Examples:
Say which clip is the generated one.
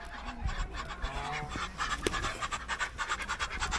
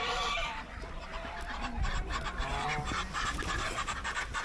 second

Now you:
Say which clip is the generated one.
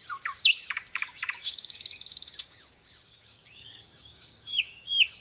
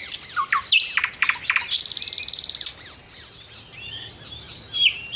first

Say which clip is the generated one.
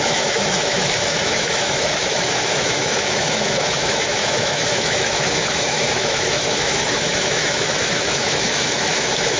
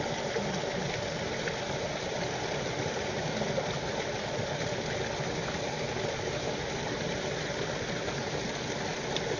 first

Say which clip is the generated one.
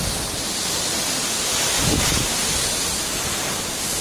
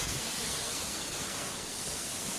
second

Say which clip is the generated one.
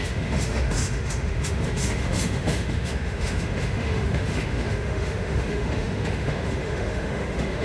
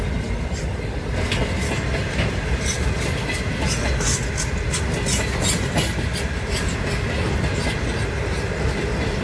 first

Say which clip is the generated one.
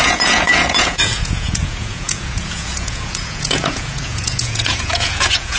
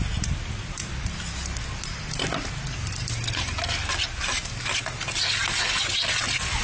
first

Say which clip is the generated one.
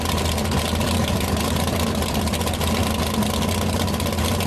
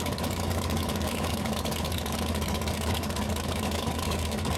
second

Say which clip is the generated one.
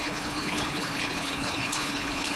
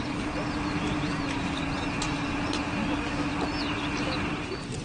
first